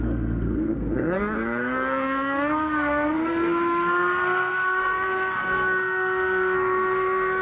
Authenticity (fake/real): fake